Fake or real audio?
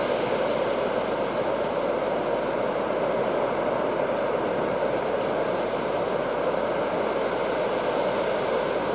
real